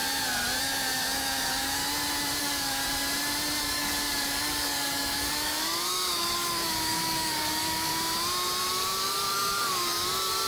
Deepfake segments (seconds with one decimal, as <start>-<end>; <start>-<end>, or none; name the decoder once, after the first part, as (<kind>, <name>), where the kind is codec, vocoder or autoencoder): 0.6-1.8 (codec, DAC); 2.4-2.8; 3.6-7.9; 8.7-10.5

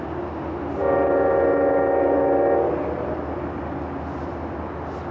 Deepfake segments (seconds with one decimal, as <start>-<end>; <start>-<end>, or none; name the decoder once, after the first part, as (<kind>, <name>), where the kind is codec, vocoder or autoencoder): none

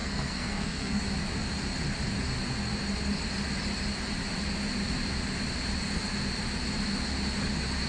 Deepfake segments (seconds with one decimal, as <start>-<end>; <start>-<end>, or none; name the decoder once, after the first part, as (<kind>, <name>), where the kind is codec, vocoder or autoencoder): 0.0-1.0 (codec, SNAC)

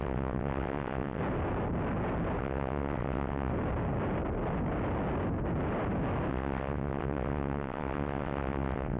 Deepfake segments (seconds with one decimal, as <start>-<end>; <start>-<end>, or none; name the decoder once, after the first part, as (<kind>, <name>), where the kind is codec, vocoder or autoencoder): 0.0-1.2 (vocoder, WaveNeXt); 2.4-3.5; 6.3-9.0

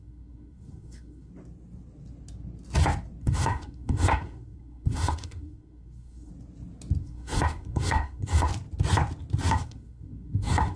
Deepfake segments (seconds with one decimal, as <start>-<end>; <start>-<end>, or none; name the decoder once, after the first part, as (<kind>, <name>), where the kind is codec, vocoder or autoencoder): 0.0-1.3 (codec, SNAC); 3.2-6.3; 7.0-8.5; 9.5-10.8

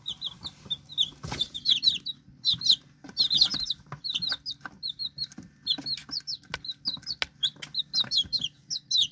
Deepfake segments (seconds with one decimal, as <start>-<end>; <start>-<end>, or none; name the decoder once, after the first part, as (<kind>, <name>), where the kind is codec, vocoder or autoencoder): none